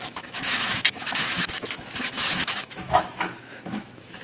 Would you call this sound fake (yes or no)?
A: yes